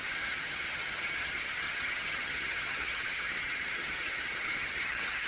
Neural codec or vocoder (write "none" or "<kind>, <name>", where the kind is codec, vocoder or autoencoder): vocoder, HiFi-GAN